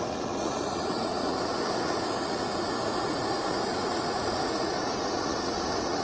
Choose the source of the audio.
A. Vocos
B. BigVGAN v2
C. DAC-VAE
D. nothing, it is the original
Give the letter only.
A